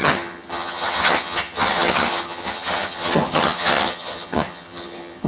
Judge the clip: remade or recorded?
remade